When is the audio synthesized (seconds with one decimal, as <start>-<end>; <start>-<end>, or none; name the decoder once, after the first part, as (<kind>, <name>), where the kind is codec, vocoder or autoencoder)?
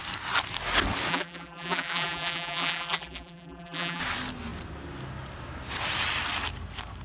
1.1-4.0 (vocoder, BigVGAN v2)